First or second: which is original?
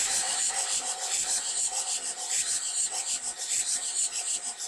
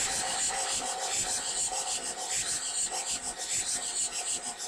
second